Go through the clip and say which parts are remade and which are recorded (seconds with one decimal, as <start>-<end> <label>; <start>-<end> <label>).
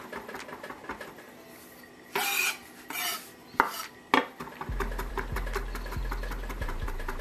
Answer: 0.0-7.2 recorded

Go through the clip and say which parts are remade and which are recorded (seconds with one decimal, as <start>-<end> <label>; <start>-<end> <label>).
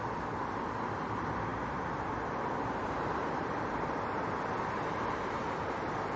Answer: 0.0-6.2 recorded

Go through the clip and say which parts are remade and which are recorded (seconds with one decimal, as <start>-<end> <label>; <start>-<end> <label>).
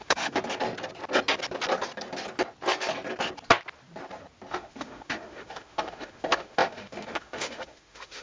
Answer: 0.0-0.4 remade; 0.4-4.5 recorded; 4.5-8.2 remade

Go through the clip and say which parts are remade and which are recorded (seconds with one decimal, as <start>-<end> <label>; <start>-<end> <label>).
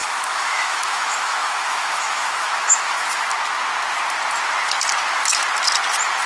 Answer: 0.0-3.3 remade; 3.3-6.3 recorded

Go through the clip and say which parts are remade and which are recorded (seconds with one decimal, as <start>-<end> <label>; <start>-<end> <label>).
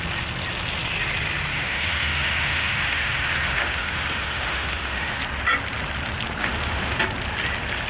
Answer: 0.0-1.5 recorded; 1.5-5.2 remade; 5.2-6.4 recorded; 6.4-7.0 remade; 7.0-7.9 recorded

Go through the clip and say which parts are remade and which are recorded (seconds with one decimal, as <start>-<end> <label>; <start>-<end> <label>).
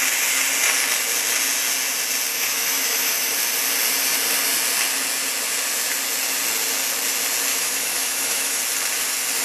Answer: 0.0-2.3 recorded; 2.3-3.3 remade; 3.3-7.5 recorded; 7.5-8.6 remade; 8.6-9.4 recorded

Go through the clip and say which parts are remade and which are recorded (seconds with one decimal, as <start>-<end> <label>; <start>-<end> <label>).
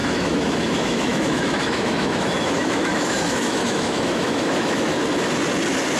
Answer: 0.0-4.9 remade; 4.9-6.0 recorded